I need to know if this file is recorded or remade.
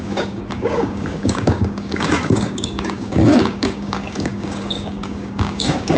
remade